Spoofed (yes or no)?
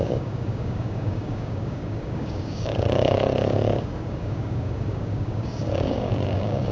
yes